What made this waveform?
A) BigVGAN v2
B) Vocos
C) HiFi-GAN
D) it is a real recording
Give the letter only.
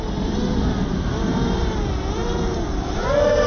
A